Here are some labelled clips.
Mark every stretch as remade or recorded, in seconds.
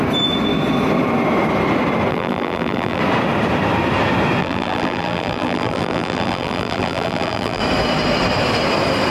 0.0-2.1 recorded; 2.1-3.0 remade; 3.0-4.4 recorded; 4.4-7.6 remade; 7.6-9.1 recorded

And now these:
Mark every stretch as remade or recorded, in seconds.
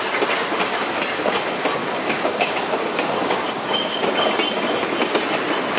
0.0-1.8 recorded; 1.8-4.0 remade; 4.0-5.8 recorded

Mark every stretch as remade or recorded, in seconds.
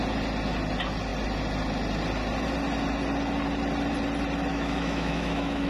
0.0-4.5 recorded; 4.5-5.7 remade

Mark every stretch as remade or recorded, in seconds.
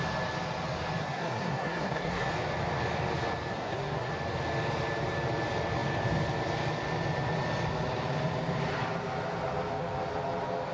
0.0-1.0 recorded; 1.0-2.3 remade; 2.3-3.5 recorded; 3.5-4.1 remade; 4.1-10.7 recorded